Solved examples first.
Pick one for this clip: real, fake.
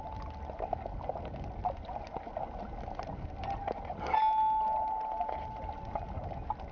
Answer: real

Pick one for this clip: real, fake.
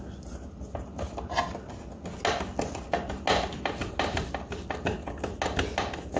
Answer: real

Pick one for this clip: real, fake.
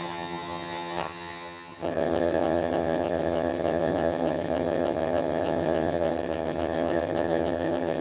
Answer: fake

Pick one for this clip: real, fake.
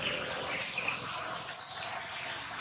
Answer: real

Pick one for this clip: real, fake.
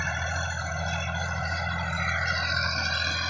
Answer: real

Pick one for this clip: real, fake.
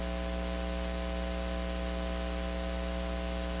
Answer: real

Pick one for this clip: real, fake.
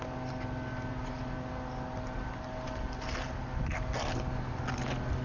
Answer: real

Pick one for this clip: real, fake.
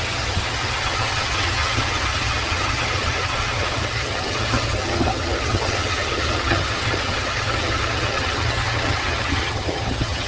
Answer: fake